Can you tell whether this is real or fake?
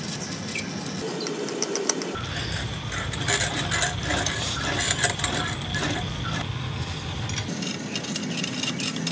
real